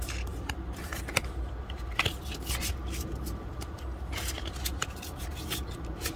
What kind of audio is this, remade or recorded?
recorded